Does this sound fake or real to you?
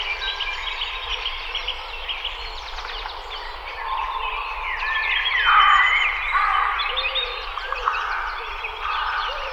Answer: fake